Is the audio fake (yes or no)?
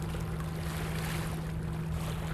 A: no